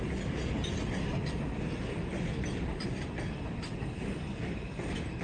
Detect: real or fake real